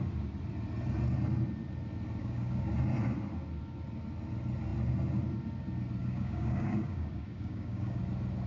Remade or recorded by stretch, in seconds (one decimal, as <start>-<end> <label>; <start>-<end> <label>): 0.0-2.2 recorded; 2.2-2.7 remade; 2.7-6.0 recorded; 6.0-8.0 remade; 8.0-8.5 recorded